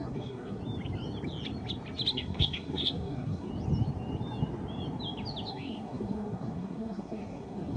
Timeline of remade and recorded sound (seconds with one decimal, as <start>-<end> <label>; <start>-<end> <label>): 0.0-0.6 remade; 0.6-2.1 recorded; 2.1-3.5 remade; 3.5-5.5 recorded; 5.5-7.8 remade